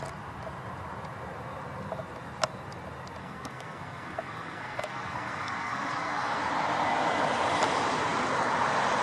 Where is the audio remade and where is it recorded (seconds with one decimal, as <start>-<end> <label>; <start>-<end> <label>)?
0.0-3.2 recorded; 3.2-6.4 remade; 6.4-9.0 recorded